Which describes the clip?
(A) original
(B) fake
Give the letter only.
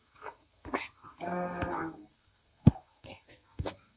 B